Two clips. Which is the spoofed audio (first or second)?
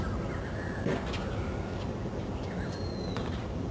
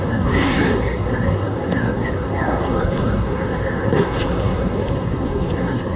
second